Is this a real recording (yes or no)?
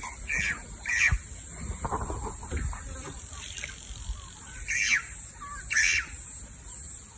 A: yes